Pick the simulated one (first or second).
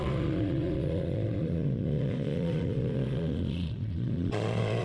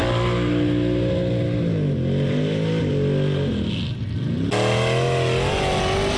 first